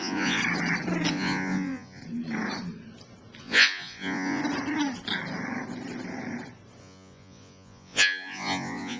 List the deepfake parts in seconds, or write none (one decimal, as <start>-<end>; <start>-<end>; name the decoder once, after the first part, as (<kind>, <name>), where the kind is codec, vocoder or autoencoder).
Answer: 0.0-0.4 (vocoder, Vocos); 1.1-2.0; 3.4-4.4; 6.8-9.0

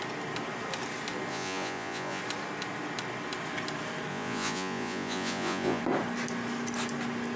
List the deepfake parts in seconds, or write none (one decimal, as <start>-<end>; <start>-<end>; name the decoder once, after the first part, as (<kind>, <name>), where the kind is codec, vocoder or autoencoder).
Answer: 1.3-2.2 (vocoder, Vocos); 4.1-5.8

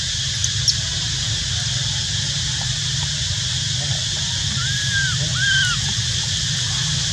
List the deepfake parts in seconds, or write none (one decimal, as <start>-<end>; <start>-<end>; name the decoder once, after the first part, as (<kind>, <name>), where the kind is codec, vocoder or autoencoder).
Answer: none

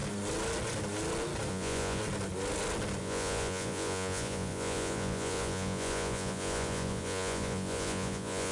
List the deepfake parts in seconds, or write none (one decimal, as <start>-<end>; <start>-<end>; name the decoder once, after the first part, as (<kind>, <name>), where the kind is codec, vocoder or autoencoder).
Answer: 1.5-2.0 (vocoder, Vocos); 3.0-8.5

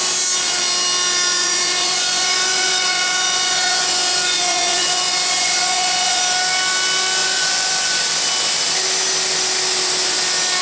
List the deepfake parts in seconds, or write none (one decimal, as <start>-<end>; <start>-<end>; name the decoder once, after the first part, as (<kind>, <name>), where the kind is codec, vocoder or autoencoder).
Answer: 1.3-6.2 (vocoder, Vocos); 7.2-8.0

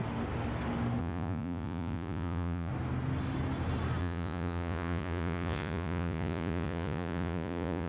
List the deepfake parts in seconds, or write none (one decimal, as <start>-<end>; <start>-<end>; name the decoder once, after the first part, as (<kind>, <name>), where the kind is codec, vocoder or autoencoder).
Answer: 1.0-2.7 (vocoder, Vocos); 4.0-7.9